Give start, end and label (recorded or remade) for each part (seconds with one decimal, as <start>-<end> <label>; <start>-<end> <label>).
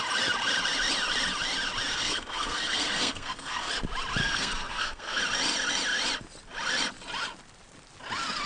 0.0-1.9 recorded; 1.9-3.7 remade; 3.7-4.2 recorded; 4.2-5.2 remade; 5.2-8.5 recorded